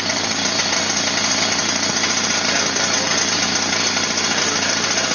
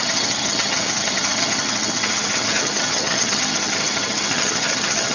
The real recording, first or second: first